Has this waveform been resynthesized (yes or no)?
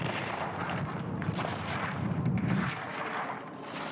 no